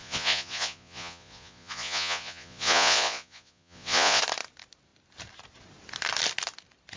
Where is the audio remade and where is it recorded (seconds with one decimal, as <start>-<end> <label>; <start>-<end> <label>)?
0.0-4.2 remade; 4.2-7.0 recorded

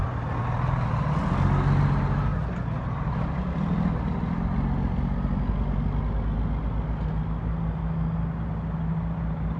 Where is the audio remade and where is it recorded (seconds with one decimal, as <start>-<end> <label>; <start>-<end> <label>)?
0.0-9.6 recorded

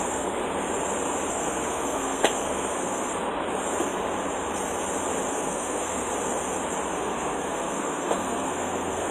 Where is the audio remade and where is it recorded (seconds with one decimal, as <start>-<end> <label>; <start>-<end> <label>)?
0.0-0.4 remade; 0.4-1.3 recorded; 1.3-3.1 remade; 3.1-5.3 recorded; 5.3-6.1 remade; 6.1-6.9 recorded; 6.9-9.1 remade

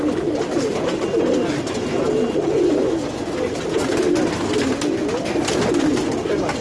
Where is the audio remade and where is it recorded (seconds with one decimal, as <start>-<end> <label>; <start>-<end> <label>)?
0.0-6.6 recorded